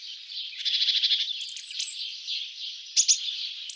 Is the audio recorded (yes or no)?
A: yes